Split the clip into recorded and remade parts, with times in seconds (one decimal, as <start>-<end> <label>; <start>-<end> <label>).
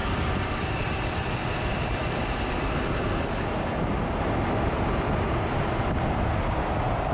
0.0-2.2 remade; 2.2-7.1 recorded